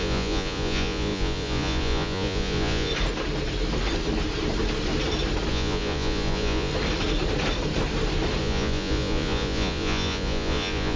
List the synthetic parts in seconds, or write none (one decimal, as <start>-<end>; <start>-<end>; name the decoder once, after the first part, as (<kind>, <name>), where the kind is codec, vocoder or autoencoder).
0.0-2.9 (vocoder, Vocos); 5.5-6.7; 8.4-11.0

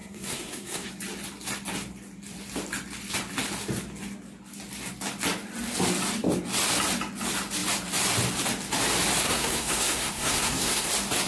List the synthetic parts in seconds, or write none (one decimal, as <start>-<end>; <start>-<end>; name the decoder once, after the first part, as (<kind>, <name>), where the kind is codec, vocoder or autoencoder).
0.0-0.9 (codec, SNAC); 9.2-10.9

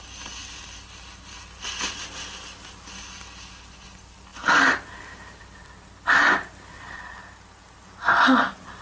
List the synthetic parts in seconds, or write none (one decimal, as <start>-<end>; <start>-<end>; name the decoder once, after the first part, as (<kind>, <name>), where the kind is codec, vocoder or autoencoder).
none